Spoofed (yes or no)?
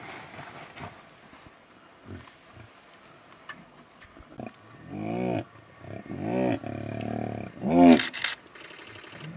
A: no